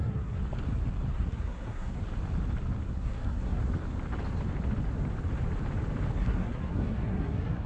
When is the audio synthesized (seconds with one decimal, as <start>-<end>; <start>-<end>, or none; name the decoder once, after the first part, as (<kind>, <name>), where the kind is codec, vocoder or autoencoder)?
0.0-0.4 (codec, SNAC); 1.1-2.0; 2.9-3.6; 6.2-7.7